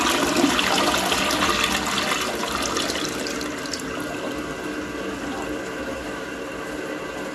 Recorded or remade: recorded